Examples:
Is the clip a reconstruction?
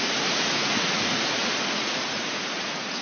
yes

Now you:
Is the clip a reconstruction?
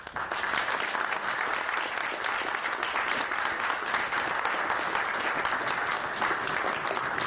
no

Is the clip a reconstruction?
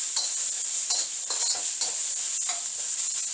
no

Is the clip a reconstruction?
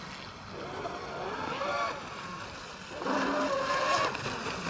no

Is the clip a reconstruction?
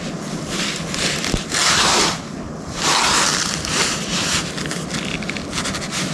no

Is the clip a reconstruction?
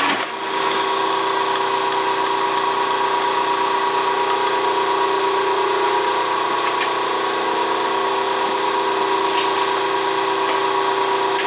no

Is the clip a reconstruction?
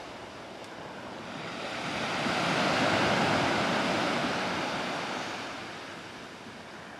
no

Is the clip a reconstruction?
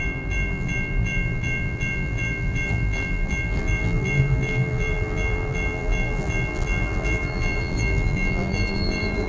yes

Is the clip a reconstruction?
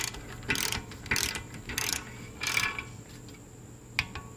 no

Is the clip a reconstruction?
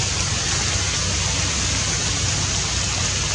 no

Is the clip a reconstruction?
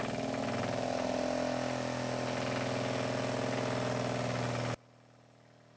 no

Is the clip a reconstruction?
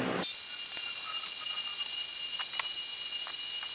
no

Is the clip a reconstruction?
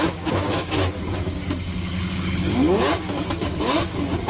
yes